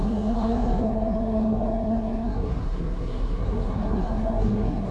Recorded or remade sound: remade